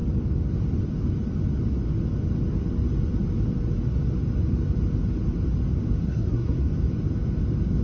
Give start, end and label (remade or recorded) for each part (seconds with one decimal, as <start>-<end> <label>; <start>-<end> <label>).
0.0-6.0 recorded; 6.0-6.7 remade; 6.7-7.8 recorded